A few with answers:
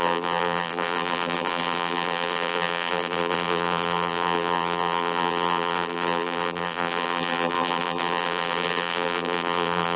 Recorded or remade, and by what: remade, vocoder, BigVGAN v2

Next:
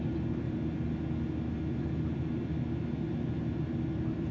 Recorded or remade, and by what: recorded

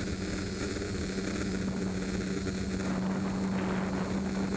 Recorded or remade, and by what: recorded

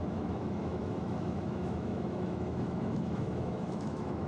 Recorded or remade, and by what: remade, autoencoder, DAC-VAE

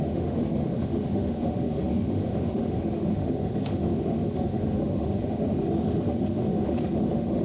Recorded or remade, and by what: remade, autoencoder, DAC-VAE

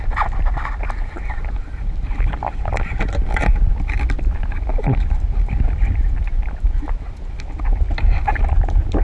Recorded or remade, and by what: recorded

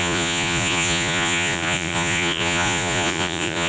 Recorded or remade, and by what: remade, vocoder, Vocos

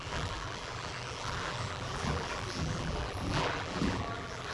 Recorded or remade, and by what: remade, vocoder, BigVGAN v2